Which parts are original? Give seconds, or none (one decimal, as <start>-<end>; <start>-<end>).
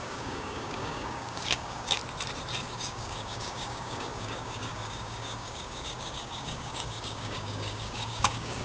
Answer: 2.0-2.6